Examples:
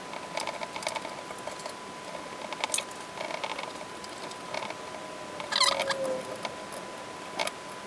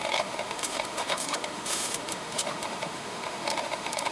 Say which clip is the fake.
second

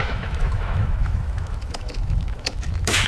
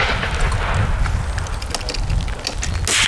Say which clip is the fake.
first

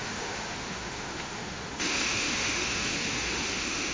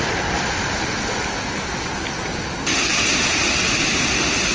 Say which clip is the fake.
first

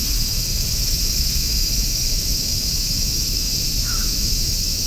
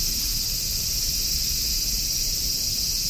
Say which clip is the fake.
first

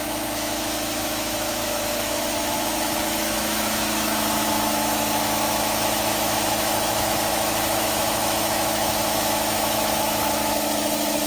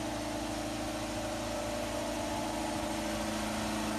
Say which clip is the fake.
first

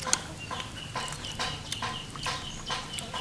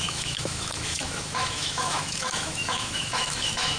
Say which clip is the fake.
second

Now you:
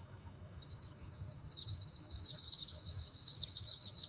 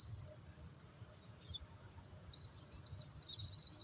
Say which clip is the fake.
first